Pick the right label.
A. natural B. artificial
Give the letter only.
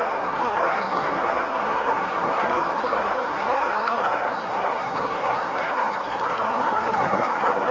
B